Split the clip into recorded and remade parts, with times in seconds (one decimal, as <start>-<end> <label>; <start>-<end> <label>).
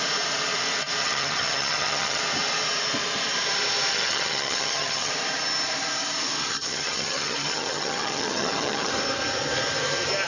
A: 0.0-1.0 recorded; 1.0-2.2 remade; 2.2-3.9 recorded; 3.9-5.1 remade; 5.1-6.4 recorded; 6.4-8.9 remade; 8.9-10.3 recorded